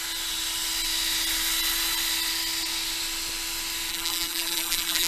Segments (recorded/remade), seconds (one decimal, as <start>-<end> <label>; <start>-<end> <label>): 0.0-3.9 recorded; 3.9-5.1 remade